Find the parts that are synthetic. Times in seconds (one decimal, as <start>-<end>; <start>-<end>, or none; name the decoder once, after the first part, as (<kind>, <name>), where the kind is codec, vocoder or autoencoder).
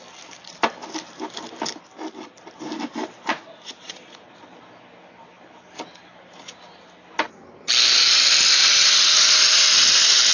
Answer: 3.2-4.5 (vocoder, Vocos)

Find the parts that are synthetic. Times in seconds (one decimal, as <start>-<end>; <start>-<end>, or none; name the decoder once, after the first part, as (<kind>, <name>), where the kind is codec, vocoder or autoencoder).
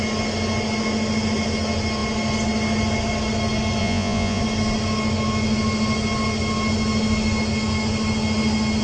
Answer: 3.8-4.4 (vocoder, Vocos)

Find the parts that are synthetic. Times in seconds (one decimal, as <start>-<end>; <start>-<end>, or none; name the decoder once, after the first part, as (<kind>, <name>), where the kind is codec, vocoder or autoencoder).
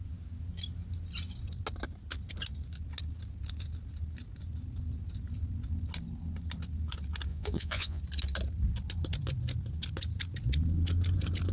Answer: 7.3-8.0 (vocoder, Vocos)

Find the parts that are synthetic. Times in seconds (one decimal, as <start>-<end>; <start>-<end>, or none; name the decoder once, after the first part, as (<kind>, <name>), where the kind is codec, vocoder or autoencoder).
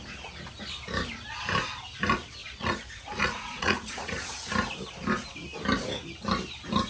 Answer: 2.4-4.4 (vocoder, Vocos)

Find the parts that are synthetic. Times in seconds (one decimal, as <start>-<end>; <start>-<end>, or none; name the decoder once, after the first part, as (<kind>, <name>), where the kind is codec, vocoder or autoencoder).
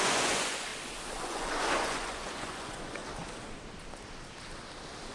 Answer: 0.0-0.7 (vocoder, Vocos); 1.2-3.0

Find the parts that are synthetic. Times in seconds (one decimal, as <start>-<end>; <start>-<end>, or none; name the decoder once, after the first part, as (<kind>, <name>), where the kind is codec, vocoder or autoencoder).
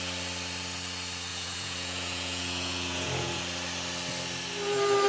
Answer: 1.3-3.4 (vocoder, Vocos)